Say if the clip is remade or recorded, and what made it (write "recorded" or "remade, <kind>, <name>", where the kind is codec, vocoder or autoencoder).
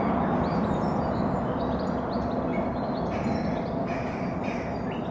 recorded